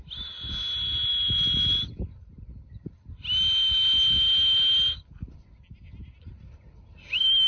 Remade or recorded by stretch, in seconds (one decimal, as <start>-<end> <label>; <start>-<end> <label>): 0.0-7.5 recorded